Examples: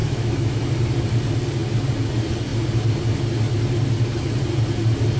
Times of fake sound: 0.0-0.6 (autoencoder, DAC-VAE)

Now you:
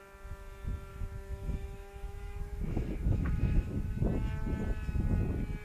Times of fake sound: 0.9-3.9 (autoencoder, DAC-VAE)

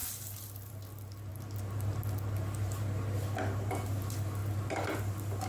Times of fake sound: none

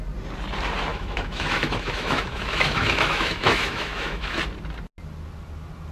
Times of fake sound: 0.9-4.4 (autoencoder, DAC-VAE)

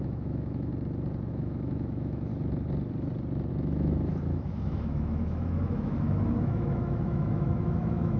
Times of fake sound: 0.0-0.7 (autoencoder, DAC-VAE); 1.3-2.3; 3.5-8.2